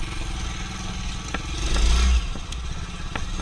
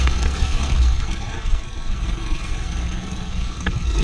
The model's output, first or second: second